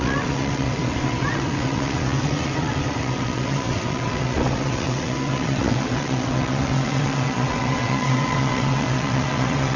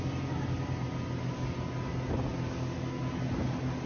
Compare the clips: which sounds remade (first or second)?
first